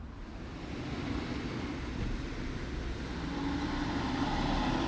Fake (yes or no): no